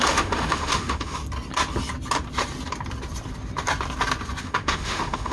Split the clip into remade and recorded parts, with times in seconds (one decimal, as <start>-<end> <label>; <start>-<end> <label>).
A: 0.0-1.2 remade; 1.2-4.4 recorded; 4.4-5.3 remade